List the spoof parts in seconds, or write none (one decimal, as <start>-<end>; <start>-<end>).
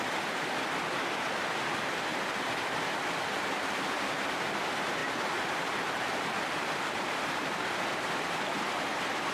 5.0-7.4